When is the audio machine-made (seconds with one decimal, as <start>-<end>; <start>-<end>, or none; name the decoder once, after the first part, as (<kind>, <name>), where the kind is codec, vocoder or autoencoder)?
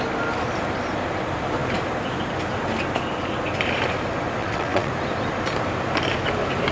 4.4-4.9 (vocoder, WaveNeXt)